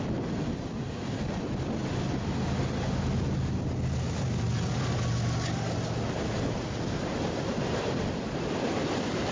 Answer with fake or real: real